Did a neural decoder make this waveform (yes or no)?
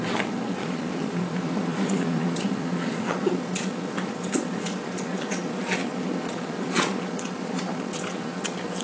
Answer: yes